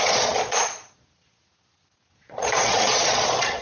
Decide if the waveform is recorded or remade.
remade